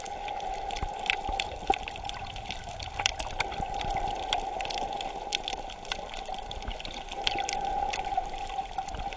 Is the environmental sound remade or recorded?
recorded